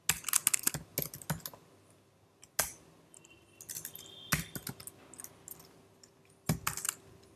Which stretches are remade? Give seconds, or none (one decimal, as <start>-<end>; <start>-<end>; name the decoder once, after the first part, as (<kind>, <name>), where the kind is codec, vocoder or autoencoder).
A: none